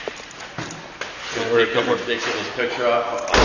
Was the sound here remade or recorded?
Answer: recorded